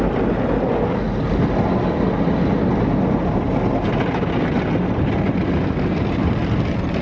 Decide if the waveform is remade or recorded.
recorded